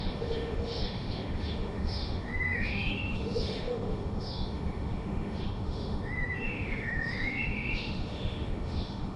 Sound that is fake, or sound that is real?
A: fake